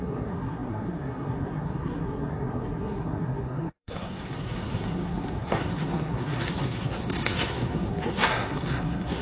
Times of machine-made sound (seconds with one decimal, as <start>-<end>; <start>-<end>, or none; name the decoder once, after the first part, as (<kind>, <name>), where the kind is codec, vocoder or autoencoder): 0.0-9.2 (codec, SNAC)